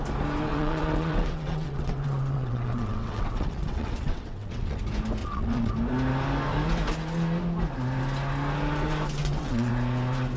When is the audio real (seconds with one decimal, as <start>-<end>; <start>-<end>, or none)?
0.0-0.5; 4.8-5.2; 5.7-9.2; 9.7-10.4